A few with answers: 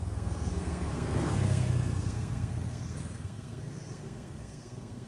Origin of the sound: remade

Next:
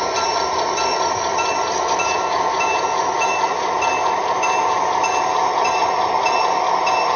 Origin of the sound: remade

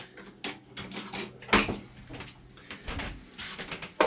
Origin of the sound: recorded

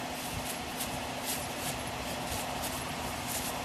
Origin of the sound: recorded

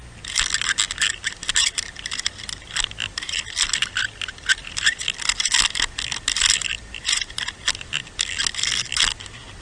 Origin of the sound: recorded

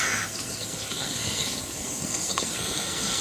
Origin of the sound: remade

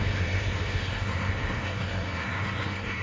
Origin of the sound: remade